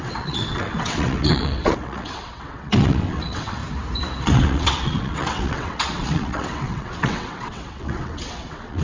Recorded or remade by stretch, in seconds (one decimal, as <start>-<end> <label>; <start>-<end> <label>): 0.0-3.6 remade; 3.6-4.2 recorded; 4.2-8.8 remade